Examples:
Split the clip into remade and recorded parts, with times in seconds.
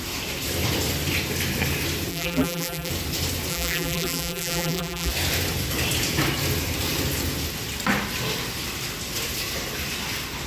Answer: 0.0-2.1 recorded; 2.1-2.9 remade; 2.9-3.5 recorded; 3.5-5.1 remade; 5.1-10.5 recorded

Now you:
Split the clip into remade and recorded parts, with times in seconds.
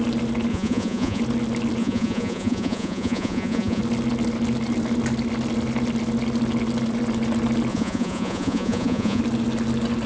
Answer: 0.0-0.5 recorded; 0.5-1.2 remade; 1.2-1.8 recorded; 1.8-3.8 remade; 3.8-7.7 recorded; 7.7-9.2 remade; 9.2-10.1 recorded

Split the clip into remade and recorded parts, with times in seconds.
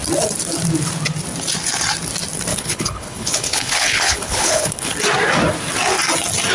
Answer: 0.0-2.5 recorded; 2.5-4.9 remade; 4.9-6.5 recorded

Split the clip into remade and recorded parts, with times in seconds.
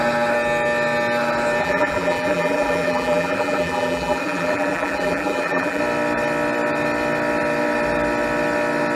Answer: 0.0-1.6 recorded; 1.6-5.8 remade; 5.8-9.0 recorded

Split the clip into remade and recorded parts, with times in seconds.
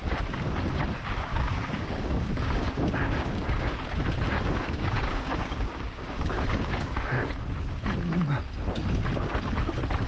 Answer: 0.0-1.3 recorded; 1.3-3.7 remade; 3.7-4.3 recorded; 4.3-7.3 remade; 7.3-10.1 recorded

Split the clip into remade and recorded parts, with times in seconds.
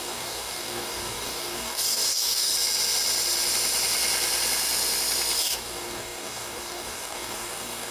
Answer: 0.0-2.5 remade; 2.5-5.4 recorded; 5.4-7.9 remade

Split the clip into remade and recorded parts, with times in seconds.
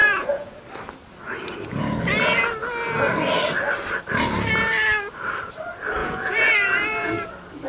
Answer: 0.0-0.6 remade; 0.6-6.0 recorded; 6.0-7.3 remade; 7.3-7.7 recorded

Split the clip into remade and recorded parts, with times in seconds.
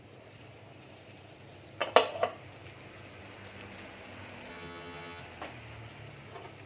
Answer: 0.0-4.5 recorded; 4.5-5.2 remade; 5.2-6.7 recorded